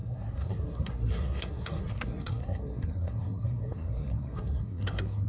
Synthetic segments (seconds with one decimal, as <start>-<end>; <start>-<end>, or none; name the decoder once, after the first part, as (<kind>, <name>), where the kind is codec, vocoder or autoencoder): 0.0-5.3 (codec, SNAC)